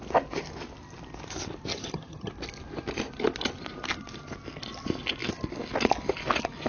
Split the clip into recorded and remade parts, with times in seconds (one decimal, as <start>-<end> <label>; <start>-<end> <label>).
0.0-1.7 recorded; 1.7-2.3 remade; 2.3-6.7 recorded